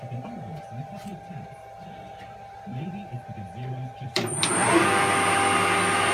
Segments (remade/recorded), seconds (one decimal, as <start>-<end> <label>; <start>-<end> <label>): 0.0-1.1 recorded; 1.1-2.1 remade; 2.1-2.7 recorded; 2.7-5.0 remade; 5.0-6.1 recorded